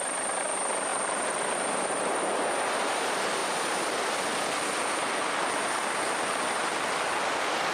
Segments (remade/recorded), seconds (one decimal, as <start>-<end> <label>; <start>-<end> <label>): 0.0-7.7 recorded